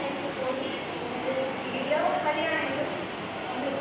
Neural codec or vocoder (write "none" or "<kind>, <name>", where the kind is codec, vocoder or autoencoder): none